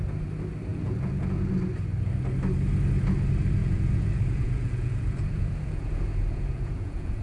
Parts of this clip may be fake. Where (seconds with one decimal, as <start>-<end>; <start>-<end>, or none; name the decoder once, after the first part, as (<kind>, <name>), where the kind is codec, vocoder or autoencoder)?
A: 0.7-1.5 (vocoder, Vocos); 3.6-7.2